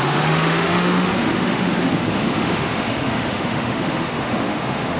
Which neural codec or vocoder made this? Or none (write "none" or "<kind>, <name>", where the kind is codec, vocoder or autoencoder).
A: autoencoder, DAC-VAE